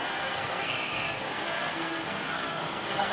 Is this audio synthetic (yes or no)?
yes